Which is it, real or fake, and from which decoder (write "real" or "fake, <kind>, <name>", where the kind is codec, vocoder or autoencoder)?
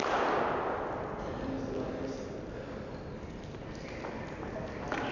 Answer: real